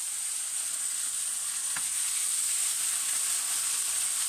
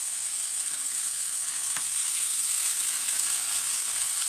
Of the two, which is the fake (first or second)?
second